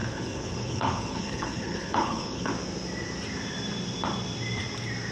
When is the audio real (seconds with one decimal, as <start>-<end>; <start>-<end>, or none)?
2.5-5.1